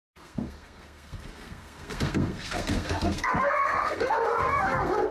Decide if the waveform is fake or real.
fake